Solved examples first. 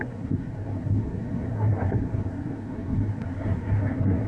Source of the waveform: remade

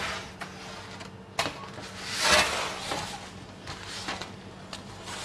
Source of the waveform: recorded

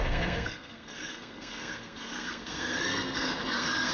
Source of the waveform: remade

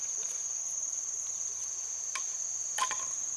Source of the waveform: recorded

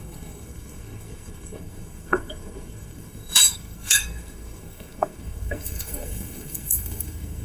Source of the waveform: remade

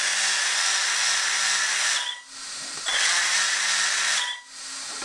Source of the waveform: recorded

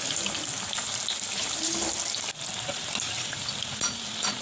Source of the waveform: recorded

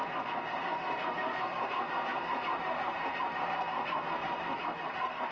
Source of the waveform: remade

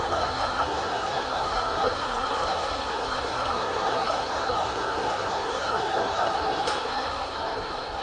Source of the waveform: remade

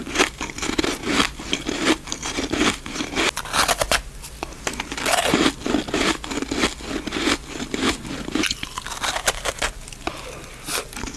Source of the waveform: recorded